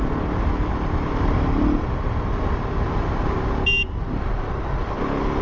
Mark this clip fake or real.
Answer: real